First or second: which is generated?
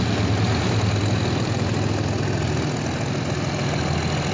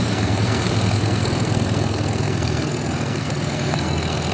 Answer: second